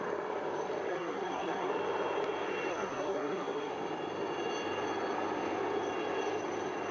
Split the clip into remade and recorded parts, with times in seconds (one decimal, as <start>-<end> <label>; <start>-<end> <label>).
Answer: 0.0-0.9 recorded; 0.9-1.7 remade; 1.7-2.7 recorded; 2.7-3.7 remade; 3.7-6.9 recorded